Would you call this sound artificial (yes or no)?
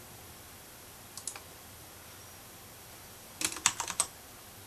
no